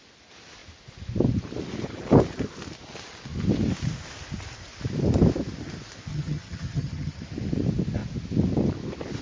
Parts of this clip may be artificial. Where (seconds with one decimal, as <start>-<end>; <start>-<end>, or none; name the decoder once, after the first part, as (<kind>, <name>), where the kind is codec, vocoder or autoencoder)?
6.1-7.2 (vocoder, HiFi-GAN)